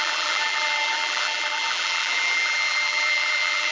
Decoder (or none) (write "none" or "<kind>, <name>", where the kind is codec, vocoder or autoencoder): vocoder, BigVGAN v2